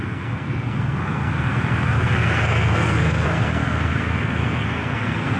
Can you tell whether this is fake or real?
fake